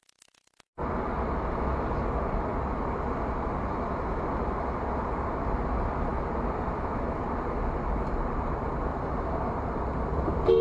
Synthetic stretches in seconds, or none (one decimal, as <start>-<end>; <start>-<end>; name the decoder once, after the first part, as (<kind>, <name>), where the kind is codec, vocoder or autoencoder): 8.9-9.9 (vocoder, BigVGAN v2)